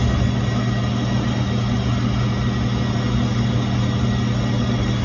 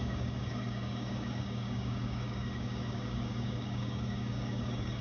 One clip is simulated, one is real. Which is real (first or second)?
first